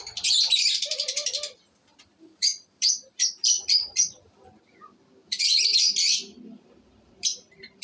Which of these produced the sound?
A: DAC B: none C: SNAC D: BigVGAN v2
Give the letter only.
D